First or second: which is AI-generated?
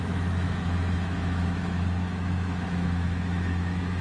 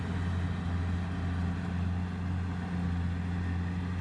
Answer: first